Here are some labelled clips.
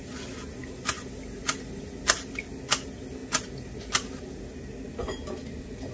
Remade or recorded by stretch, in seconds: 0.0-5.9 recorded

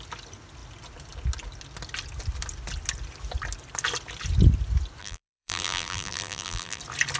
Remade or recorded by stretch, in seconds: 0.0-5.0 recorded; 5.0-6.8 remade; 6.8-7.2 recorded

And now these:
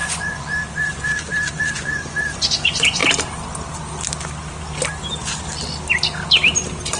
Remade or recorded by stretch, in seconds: 0.0-3.0 remade; 3.0-7.0 recorded